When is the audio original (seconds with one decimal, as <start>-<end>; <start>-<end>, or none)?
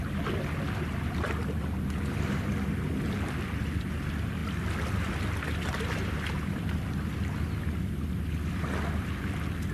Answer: 0.0-9.7